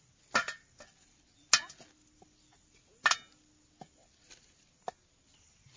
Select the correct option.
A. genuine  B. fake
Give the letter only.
A